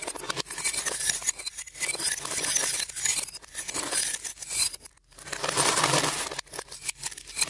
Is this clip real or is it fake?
fake